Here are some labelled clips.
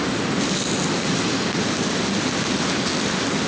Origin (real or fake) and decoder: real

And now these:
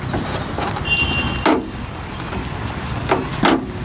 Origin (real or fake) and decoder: real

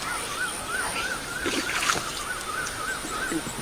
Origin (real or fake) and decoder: real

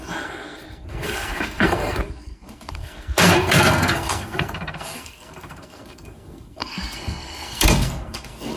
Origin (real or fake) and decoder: fake, codec, SNAC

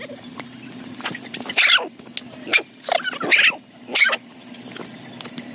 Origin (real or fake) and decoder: real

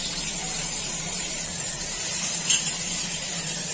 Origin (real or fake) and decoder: fake, vocoder, BigVGAN v2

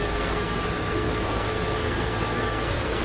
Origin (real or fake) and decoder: fake, codec, SNAC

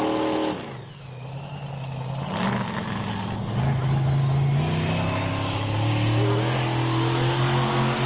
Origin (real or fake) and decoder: real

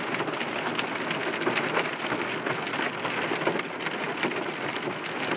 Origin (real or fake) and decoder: real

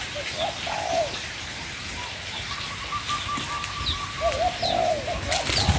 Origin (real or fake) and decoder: real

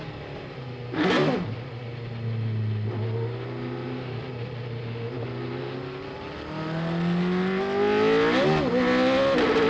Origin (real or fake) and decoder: real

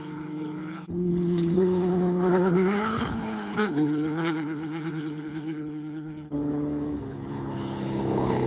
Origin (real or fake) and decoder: fake, codec, HILCodec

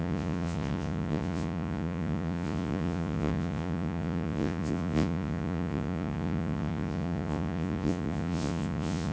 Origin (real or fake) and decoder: fake, vocoder, Vocos